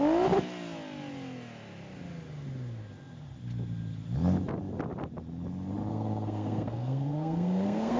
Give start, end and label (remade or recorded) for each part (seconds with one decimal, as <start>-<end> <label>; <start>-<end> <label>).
0.0-5.9 recorded; 5.9-8.0 remade